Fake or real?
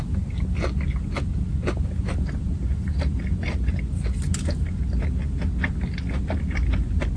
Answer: real